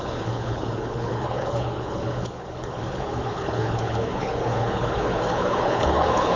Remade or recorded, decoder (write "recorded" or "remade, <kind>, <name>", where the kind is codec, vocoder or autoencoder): remade, codec, HILCodec